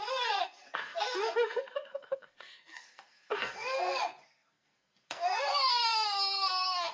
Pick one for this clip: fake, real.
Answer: fake